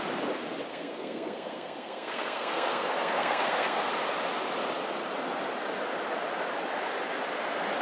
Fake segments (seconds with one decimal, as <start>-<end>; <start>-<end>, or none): 0.7-3.9